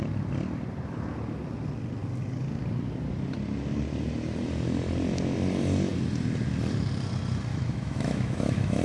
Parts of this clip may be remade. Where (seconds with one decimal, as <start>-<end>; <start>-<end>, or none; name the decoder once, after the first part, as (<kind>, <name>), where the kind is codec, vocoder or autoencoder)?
7.5-8.8 (autoencoder, DAC-VAE)